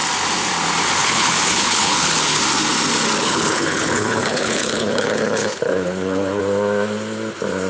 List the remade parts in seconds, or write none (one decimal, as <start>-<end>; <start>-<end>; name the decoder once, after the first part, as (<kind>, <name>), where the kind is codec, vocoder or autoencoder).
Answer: 1.0-2.4 (codec, HILCodec); 3.2-6.4